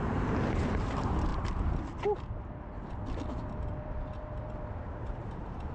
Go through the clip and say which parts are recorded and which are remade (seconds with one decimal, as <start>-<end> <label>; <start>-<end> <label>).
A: 0.0-1.3 remade; 1.3-4.7 recorded; 4.7-5.7 remade